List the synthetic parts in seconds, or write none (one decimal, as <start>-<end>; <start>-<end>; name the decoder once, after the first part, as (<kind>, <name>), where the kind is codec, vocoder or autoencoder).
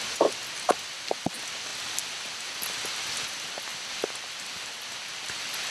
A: none